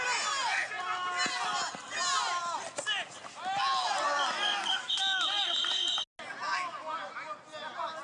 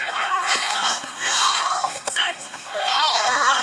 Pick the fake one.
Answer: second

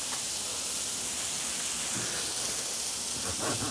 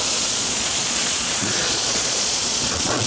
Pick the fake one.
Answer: second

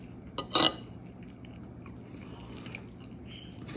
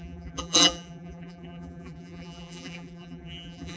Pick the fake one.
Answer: second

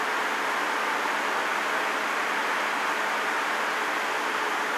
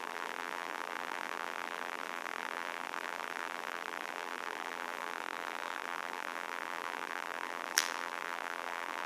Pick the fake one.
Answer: second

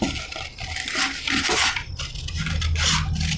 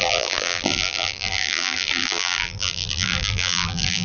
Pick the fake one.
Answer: second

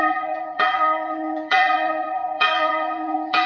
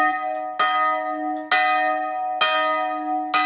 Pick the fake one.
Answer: first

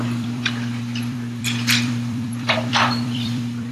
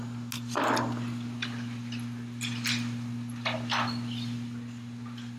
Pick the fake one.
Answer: first